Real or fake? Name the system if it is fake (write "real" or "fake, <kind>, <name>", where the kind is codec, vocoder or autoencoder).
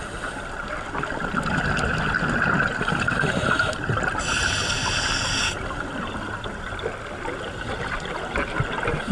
real